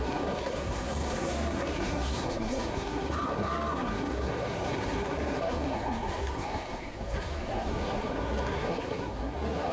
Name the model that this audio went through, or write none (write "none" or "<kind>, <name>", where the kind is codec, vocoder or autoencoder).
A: codec, SNAC